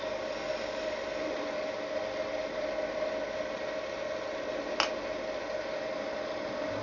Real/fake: real